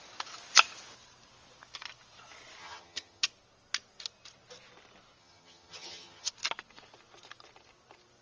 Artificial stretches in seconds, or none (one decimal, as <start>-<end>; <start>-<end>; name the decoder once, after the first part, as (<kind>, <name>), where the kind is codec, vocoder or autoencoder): 2.6-3.2 (vocoder, HiFi-GAN); 5.2-6.3